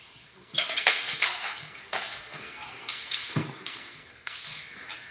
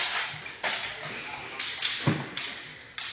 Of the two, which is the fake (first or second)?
first